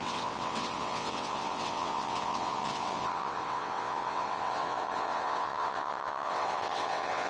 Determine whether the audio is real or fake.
fake